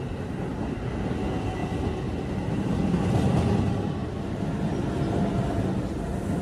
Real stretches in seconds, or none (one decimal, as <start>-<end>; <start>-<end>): 0.0-6.4